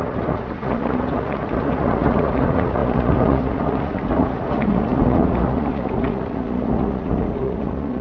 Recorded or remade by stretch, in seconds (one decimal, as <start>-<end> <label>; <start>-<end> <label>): 0.0-8.0 remade